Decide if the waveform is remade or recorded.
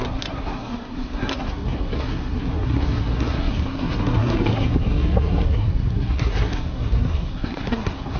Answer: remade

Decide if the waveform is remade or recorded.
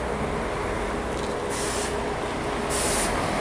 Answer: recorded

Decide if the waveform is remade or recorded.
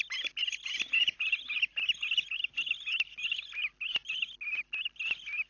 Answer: recorded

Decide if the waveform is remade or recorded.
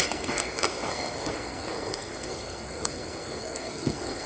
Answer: remade